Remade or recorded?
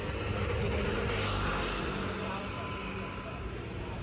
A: recorded